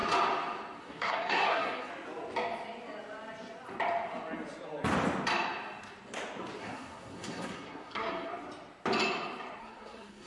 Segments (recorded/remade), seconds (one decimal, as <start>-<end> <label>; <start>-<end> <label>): 0.0-0.8 recorded; 0.8-1.9 remade; 1.9-6.6 recorded; 6.6-8.3 remade; 8.3-9.6 recorded; 9.6-10.3 remade